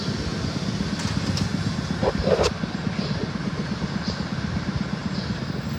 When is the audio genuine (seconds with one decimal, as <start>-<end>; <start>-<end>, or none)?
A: 0.0-5.8